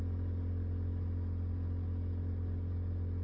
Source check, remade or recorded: recorded